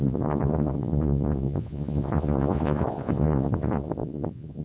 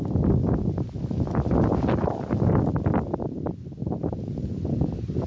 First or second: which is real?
second